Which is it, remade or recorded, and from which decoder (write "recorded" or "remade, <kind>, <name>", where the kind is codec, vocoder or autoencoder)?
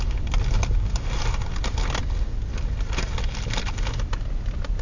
recorded